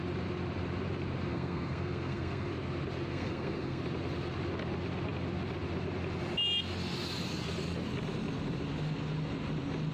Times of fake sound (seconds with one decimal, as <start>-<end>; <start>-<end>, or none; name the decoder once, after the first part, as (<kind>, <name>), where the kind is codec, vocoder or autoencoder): 1.3-2.5 (codec, SNAC); 3.1-3.8